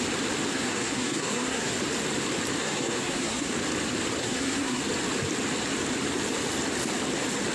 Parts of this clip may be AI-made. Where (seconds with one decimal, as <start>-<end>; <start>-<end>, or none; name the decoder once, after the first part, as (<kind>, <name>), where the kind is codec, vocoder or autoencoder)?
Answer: 0.5-1.7 (codec, SNAC); 2.6-3.5; 4.2-4.8